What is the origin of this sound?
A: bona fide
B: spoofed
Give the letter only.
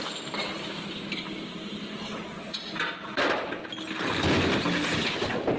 A